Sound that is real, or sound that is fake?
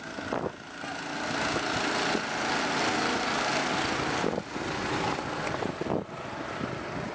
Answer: real